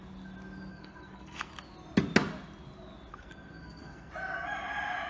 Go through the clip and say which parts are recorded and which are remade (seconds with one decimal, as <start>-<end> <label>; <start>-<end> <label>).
0.0-0.7 recorded; 0.7-1.5 remade; 1.5-3.1 recorded; 3.1-4.1 remade; 4.1-5.1 recorded